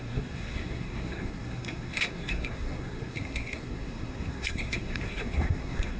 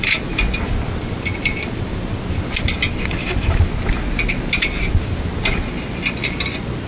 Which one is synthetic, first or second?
first